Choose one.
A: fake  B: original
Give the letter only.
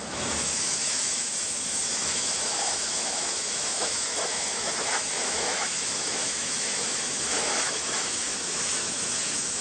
A